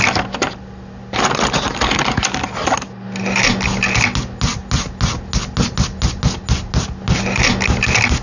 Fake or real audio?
real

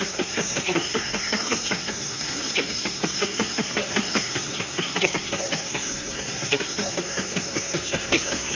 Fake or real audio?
fake